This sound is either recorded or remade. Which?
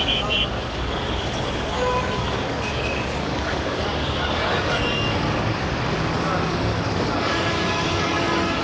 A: remade